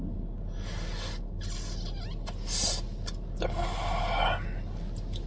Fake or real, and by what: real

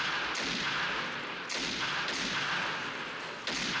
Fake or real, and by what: real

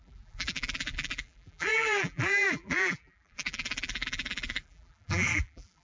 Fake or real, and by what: fake, vocoder, BigVGAN v2